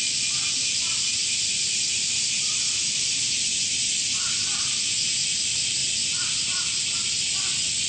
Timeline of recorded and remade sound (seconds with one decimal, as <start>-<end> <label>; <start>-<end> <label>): 0.0-1.2 recorded; 1.2-4.8 remade; 4.8-5.8 recorded; 5.8-7.1 remade; 7.1-7.9 recorded